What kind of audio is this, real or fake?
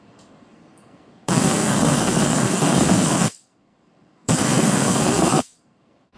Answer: fake